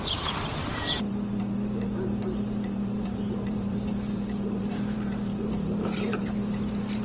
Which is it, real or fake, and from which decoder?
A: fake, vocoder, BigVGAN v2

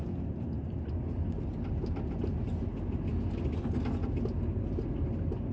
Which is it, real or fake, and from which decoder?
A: real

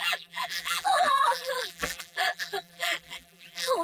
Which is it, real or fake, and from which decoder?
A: fake, vocoder, BigVGAN v2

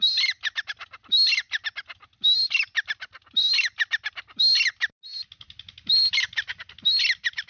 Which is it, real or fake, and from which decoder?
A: real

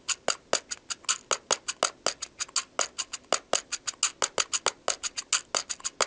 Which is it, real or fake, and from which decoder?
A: real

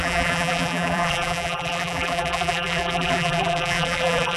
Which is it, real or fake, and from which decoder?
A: fake, vocoder, BigVGAN v2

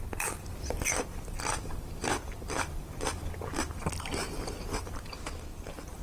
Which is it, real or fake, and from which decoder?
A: fake, vocoder, BigVGAN v2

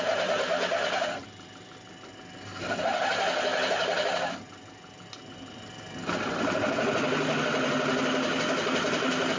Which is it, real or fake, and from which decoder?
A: real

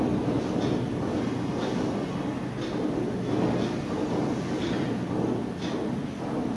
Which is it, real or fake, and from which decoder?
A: real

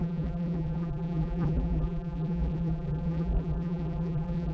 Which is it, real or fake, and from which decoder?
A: fake, vocoder, BigVGAN v2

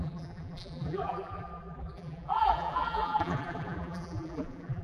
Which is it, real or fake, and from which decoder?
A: fake, vocoder, BigVGAN v2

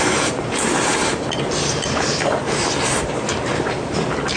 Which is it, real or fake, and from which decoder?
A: fake, vocoder, BigVGAN v2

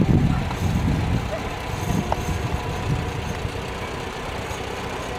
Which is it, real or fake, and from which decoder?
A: real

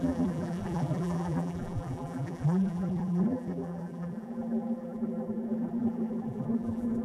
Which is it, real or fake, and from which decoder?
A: fake, vocoder, BigVGAN v2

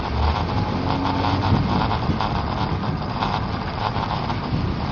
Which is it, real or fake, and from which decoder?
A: real